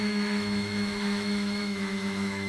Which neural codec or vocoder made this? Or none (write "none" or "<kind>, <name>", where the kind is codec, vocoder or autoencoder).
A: autoencoder, DAC-VAE